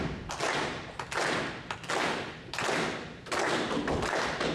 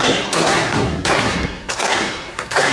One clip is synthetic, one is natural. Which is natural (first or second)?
first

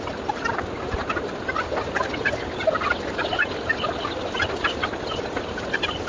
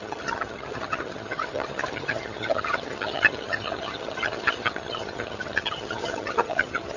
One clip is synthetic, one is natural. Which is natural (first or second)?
first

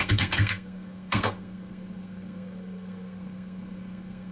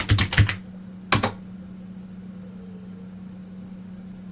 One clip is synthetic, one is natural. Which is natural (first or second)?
second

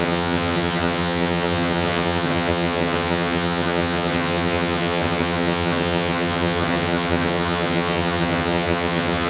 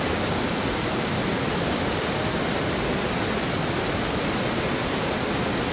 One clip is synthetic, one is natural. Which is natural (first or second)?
second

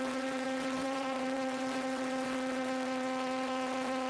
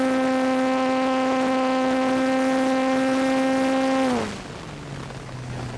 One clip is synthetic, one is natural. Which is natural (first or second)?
second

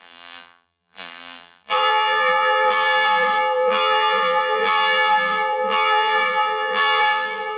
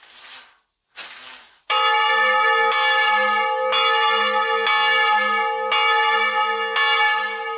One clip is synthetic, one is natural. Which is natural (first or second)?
second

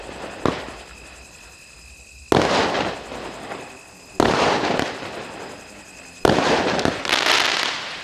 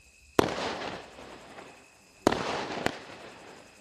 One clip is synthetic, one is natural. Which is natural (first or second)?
first